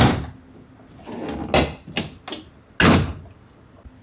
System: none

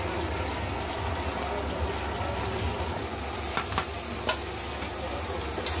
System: none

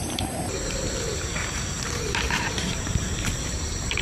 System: vocoder, BigVGAN v2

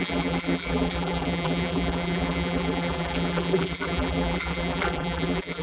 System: vocoder, BigVGAN v2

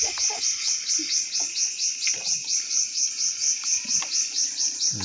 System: none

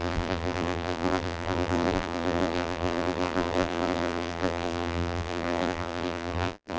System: vocoder, BigVGAN v2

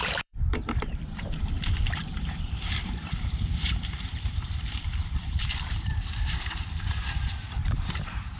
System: vocoder, BigVGAN v2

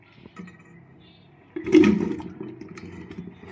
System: none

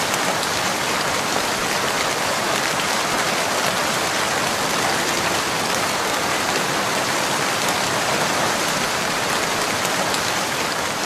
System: vocoder, BigVGAN v2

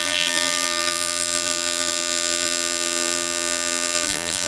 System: vocoder, BigVGAN v2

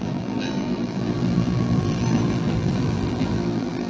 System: vocoder, BigVGAN v2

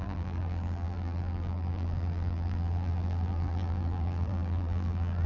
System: vocoder, BigVGAN v2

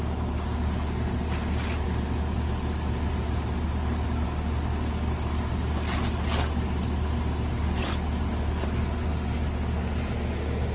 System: none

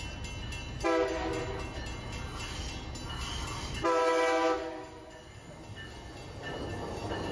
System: none